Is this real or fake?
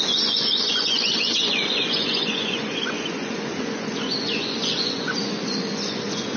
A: fake